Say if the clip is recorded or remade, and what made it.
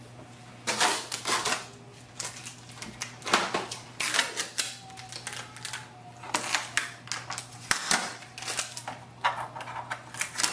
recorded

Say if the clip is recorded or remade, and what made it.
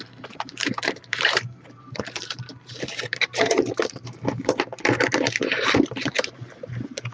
remade, vocoder, BigVGAN v2